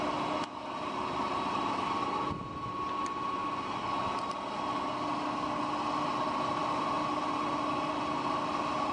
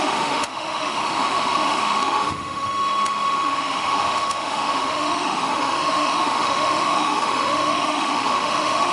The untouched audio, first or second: first